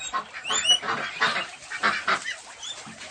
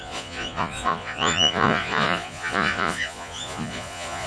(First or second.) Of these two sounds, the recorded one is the first